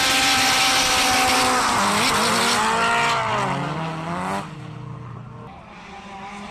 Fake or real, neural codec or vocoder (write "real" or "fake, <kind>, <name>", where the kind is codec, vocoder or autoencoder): real